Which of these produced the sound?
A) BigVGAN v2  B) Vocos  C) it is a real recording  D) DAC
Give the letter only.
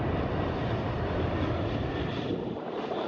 C